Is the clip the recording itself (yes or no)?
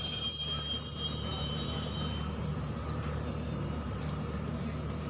no